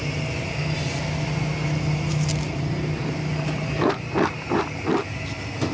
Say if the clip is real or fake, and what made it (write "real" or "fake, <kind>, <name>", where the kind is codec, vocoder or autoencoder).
real